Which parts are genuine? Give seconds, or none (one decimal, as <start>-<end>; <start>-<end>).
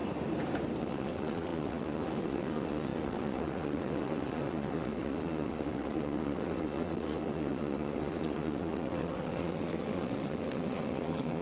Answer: 0.0-0.8